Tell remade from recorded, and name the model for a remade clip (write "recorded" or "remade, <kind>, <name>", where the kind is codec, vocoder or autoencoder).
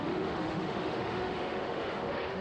remade, autoencoder, DAC-VAE